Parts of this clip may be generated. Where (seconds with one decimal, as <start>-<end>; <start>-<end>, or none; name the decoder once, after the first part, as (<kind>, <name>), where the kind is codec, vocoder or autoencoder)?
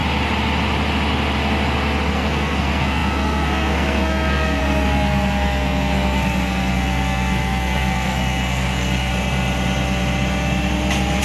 2.1-9.1 (codec, SNAC)